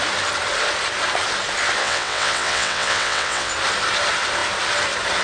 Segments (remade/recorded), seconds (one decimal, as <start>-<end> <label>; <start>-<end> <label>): 0.0-1.8 recorded; 1.8-3.5 remade; 3.5-5.2 recorded